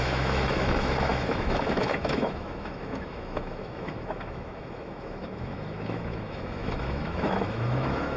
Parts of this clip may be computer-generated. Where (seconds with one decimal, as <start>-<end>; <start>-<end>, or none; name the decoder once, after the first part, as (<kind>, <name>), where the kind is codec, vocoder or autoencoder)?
0.0-8.2 (autoencoder, DAC-VAE)